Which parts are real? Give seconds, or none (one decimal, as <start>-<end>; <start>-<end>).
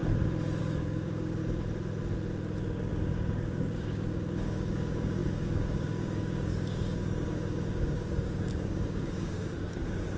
0.0-0.6; 1.4-3.1